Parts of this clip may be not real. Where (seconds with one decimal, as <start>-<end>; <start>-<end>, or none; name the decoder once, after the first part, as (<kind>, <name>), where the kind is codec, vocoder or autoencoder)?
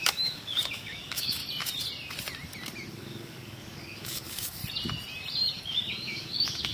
0.0-1.4 (codec, DAC); 2.9-4.6; 5.6-6.7